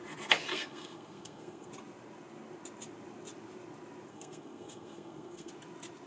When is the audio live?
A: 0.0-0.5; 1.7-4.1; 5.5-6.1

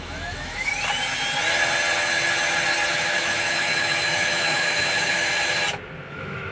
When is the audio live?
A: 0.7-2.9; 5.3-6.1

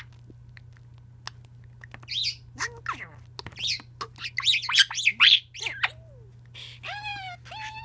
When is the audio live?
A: 0.0-7.8

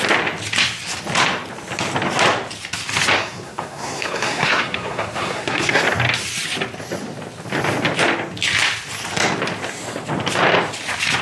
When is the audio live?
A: 0.0-3.2; 5.8-11.2

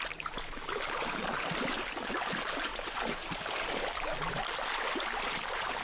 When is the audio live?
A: 0.0-5.8

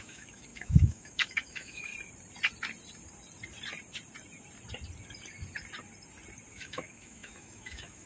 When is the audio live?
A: 1.9-6.5

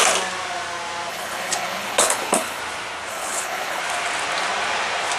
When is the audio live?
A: 0.0-1.1; 2.6-3.1; 3.8-5.2

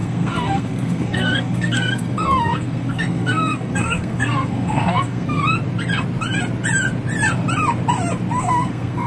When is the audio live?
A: 5.4-8.4